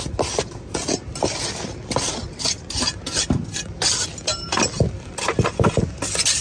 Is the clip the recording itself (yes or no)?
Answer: yes